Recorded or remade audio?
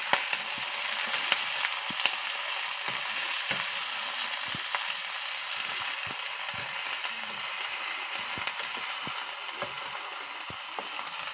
recorded